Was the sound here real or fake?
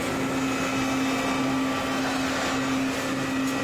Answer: real